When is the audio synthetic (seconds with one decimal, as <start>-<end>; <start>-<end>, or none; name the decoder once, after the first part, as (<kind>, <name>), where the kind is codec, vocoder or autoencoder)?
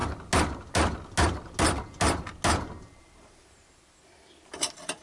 3.0-5.0 (vocoder, BigVGAN v2)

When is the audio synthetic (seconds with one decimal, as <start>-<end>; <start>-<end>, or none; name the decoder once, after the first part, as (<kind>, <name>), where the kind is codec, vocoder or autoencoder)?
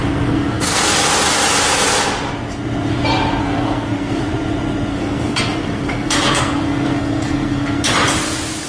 0.0-0.8 (codec, SNAC); 3.4-4.2; 4.9-7.8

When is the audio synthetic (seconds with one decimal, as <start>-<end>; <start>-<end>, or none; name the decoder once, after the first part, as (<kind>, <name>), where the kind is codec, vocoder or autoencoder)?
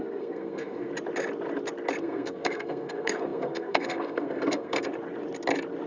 0.0-0.9 (codec, SNAC); 2.0-4.9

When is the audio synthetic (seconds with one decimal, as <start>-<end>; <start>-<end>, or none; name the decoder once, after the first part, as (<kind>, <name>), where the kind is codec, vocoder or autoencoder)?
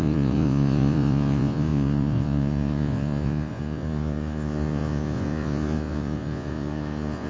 0.0-7.3 (vocoder, Vocos)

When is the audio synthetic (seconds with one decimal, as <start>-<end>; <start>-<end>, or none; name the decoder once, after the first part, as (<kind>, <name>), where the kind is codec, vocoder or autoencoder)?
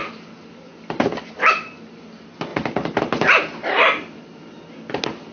3.6-4.2 (vocoder, BigVGAN v2)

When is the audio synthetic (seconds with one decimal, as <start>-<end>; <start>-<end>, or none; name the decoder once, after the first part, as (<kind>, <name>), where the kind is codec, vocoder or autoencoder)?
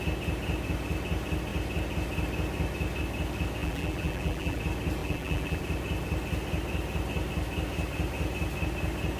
3.6-4.6 (vocoder, BigVGAN v2); 5.0-5.6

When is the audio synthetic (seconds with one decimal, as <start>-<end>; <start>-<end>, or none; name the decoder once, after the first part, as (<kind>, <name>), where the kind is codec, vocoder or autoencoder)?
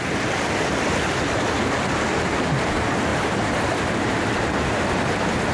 3.1-4.8 (vocoder, BigVGAN v2)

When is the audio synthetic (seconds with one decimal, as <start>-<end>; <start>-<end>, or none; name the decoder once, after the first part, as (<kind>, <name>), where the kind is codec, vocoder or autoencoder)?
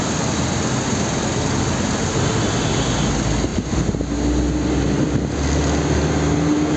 3.5-4.0 (vocoder, BigVGAN v2)